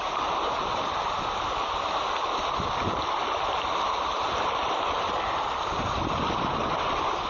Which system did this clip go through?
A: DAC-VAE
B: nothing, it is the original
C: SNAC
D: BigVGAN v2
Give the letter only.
B